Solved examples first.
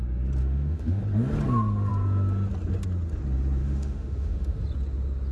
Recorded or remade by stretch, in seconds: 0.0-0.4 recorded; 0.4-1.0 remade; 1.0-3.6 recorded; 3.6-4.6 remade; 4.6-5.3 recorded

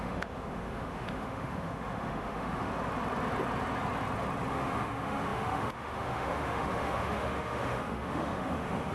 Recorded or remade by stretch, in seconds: 0.0-2.7 remade; 2.7-4.5 recorded; 4.5-8.9 remade

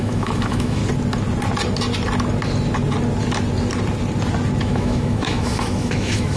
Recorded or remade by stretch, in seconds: 0.0-0.8 remade; 0.8-4.6 recorded; 4.6-6.4 remade

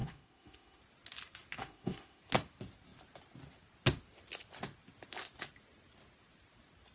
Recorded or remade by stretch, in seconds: 0.0-0.8 remade; 0.8-1.6 recorded; 1.6-2.2 remade; 2.2-6.9 recorded